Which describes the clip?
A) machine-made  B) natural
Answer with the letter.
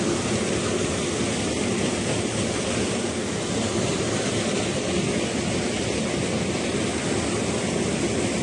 B